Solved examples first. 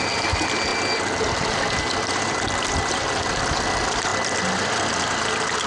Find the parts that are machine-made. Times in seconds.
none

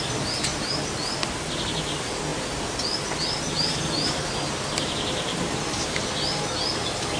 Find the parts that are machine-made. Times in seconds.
none

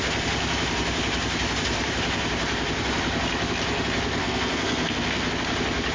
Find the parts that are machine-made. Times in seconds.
4.2-5.3 (codec, SNAC)

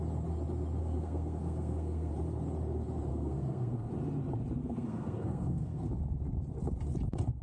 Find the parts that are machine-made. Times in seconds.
0.8-2.1 (codec, SNAC); 3.1-3.9; 4.6-5.9

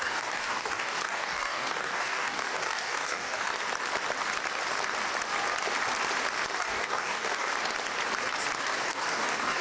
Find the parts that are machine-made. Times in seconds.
0.0-3.5 (codec, DAC); 6.6-7.5; 8.6-9.6

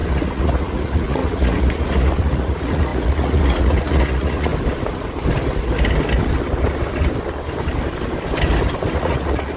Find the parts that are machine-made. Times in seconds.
0.0-4.5 (vocoder, Vocos); 9.0-9.6

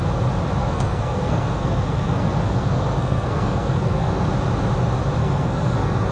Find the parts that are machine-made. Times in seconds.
0.6-4.3 (codec, SNAC); 5.2-6.1